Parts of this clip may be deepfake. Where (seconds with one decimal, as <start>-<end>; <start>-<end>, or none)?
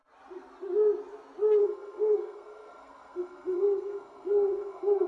1.6-5.1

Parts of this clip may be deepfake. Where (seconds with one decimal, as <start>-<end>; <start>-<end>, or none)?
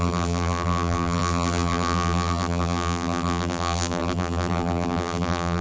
0.0-5.6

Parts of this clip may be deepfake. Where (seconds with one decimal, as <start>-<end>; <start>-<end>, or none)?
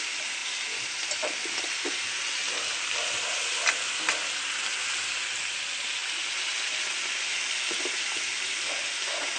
none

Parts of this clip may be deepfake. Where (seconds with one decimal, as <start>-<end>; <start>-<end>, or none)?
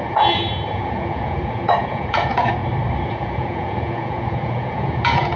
0.0-2.6; 3.1-5.4